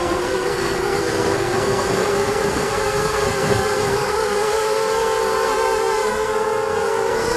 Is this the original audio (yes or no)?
no